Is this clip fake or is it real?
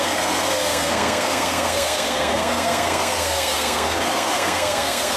fake